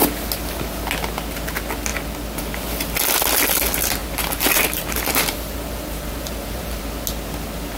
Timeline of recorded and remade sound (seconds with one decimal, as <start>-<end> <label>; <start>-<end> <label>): 0.0-4.0 recorded; 4.0-6.8 remade; 6.8-7.8 recorded